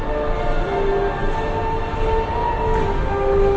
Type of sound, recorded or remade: recorded